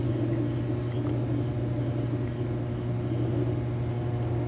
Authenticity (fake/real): real